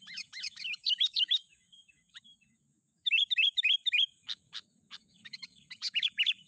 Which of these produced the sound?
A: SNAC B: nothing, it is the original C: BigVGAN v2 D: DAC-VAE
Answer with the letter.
D